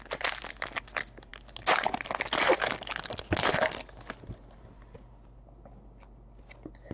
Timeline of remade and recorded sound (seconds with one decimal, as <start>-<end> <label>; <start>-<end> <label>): 0.0-6.9 recorded